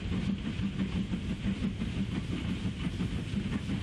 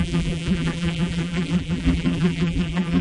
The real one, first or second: first